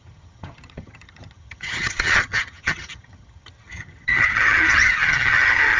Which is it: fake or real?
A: fake